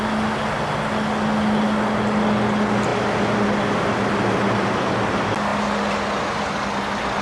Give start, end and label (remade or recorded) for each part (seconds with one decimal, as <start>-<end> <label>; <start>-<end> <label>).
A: 0.0-7.2 recorded